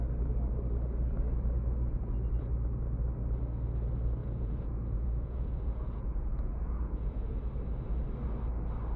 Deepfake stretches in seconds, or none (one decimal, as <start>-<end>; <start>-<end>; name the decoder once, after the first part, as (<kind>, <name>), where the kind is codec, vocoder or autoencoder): 4.2-7.4 (vocoder, Vocos)